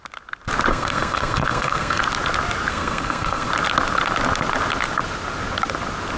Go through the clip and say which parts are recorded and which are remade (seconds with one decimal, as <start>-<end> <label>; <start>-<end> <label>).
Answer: 0.0-0.7 recorded; 0.7-2.0 remade; 2.0-2.7 recorded; 2.7-3.5 remade; 3.5-6.2 recorded